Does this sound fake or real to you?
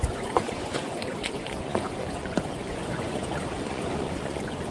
fake